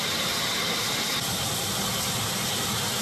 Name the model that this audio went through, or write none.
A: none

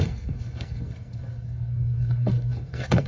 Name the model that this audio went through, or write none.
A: codec, SNAC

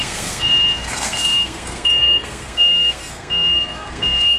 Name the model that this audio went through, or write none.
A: codec, SNAC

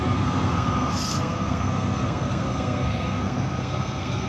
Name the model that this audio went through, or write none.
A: codec, SNAC